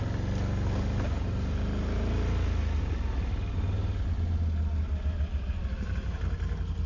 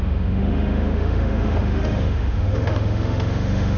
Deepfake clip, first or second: second